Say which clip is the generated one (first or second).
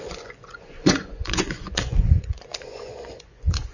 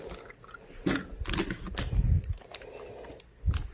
first